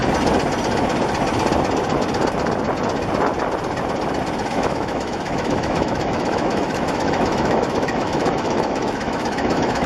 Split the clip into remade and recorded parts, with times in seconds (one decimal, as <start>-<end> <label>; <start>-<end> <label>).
0.0-4.5 recorded; 4.5-9.9 remade